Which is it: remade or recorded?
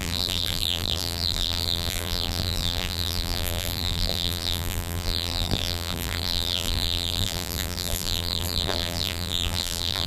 remade